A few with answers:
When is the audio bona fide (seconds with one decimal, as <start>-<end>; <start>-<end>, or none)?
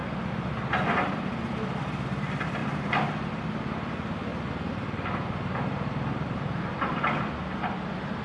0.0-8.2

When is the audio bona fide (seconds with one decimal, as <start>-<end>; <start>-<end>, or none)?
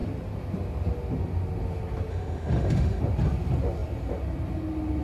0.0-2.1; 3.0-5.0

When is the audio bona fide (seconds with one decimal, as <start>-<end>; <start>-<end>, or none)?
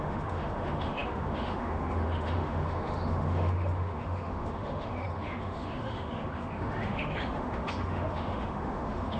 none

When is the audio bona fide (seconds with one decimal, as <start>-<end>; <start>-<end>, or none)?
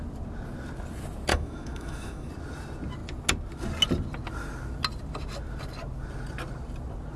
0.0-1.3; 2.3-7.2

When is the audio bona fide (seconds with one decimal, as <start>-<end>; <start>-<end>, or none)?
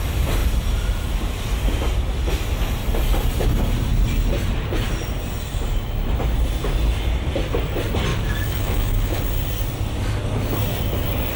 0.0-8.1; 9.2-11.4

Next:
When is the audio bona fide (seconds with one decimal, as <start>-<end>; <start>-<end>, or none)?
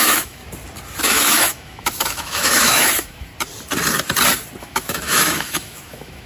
0.4-1.0; 3.3-4.6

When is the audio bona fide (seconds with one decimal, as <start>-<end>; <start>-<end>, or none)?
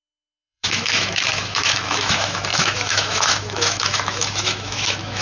none